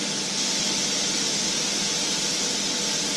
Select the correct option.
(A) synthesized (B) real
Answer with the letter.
B